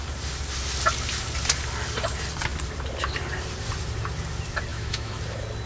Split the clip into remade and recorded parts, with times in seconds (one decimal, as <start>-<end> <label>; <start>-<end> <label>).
0.0-4.7 recorded; 4.7-5.2 remade; 5.2-5.7 recorded